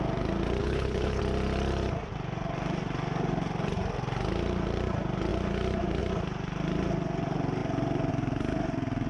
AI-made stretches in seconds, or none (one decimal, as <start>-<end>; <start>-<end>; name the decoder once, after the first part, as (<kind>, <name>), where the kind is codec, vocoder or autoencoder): 0.6-1.2 (codec, HILCodec)